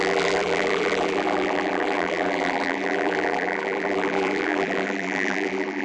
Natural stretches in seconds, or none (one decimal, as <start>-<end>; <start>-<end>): none